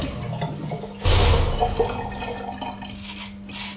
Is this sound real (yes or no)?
yes